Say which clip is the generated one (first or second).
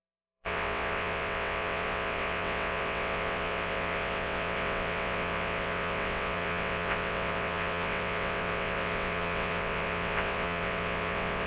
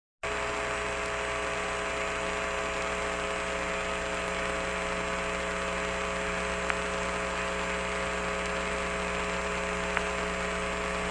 first